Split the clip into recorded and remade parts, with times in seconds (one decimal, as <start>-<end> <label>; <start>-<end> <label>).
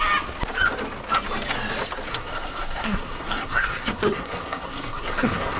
0.0-2.1 recorded; 2.1-5.6 remade